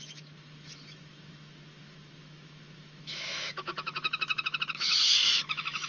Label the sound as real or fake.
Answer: fake